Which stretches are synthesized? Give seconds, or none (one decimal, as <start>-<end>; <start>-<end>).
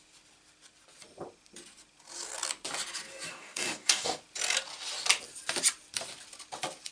3.3-4.2